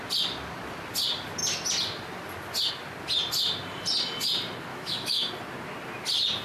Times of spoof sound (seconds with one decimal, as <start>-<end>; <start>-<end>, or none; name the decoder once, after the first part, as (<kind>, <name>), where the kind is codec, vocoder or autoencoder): 4.7-5.3 (autoencoder, DAC-VAE)